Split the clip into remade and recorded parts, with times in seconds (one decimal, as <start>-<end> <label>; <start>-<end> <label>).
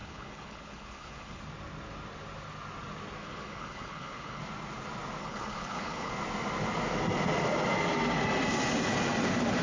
0.0-1.4 remade; 1.4-3.2 recorded; 3.2-4.4 remade; 4.4-5.2 recorded; 5.2-6.1 remade; 6.1-9.6 recorded